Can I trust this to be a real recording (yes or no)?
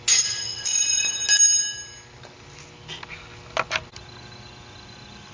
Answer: yes